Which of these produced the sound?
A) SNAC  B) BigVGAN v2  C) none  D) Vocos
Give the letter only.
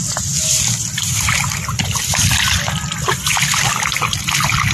C